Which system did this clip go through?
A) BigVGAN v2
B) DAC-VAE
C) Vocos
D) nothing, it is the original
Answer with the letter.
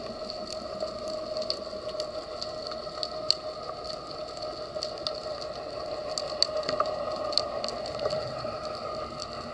D